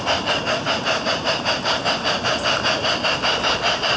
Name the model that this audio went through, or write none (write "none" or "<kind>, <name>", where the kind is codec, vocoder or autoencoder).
none